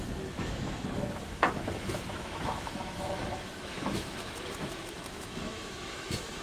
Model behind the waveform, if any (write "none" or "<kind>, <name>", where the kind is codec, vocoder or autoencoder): autoencoder, DAC-VAE